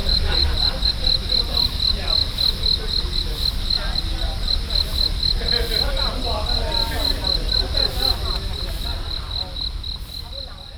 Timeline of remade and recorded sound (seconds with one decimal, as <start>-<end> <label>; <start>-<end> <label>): 0.0-0.9 remade; 0.9-10.8 recorded